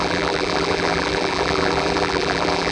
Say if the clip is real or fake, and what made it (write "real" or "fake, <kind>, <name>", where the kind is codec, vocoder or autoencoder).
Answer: fake, vocoder, BigVGAN v2